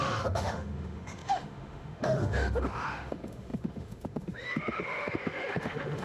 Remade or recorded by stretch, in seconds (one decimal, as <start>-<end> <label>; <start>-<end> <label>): 0.0-6.0 remade